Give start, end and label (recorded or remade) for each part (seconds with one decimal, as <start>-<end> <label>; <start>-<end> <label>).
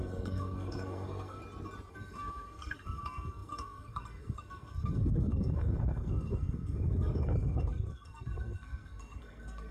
0.0-1.4 remade; 1.4-1.9 recorded; 1.9-9.7 remade